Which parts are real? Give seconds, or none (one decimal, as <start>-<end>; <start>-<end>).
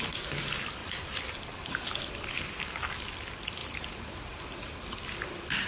3.6-5.7